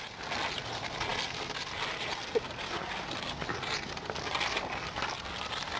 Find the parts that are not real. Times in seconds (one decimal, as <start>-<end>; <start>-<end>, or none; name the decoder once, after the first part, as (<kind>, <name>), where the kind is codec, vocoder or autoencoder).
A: none